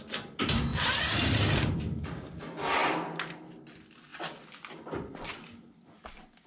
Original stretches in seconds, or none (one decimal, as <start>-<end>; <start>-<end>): 0.0-6.5